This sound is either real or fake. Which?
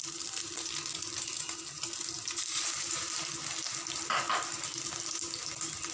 real